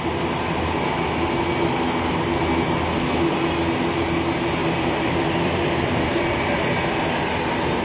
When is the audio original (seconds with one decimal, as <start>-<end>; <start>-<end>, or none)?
0.0-4.6; 6.8-7.8